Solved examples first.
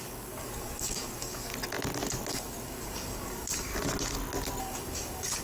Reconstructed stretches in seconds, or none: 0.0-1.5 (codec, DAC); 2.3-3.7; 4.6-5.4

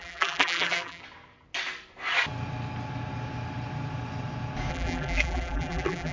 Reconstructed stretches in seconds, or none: 0.0-1.0 (vocoder, BigVGAN v2); 4.7-6.1

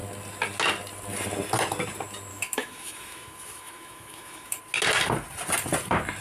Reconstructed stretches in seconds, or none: 2.3-4.6 (autoencoder, DAC-VAE)

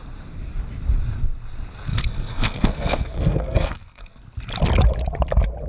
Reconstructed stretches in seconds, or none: 1.9-4.2 (codec, SNAC)

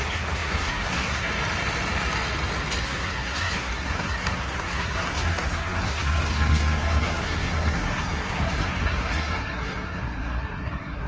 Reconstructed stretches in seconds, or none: 0.0-1.3 (codec, SNAC); 2.8-11.1

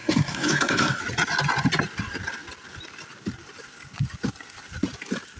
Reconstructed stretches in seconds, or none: 0.0-1.0 (codec, SNAC)